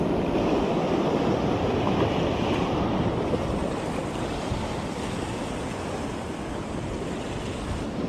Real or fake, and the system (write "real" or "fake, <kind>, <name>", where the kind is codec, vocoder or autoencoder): real